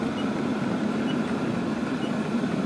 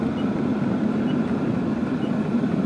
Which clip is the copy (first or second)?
second